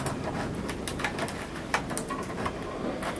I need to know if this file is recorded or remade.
recorded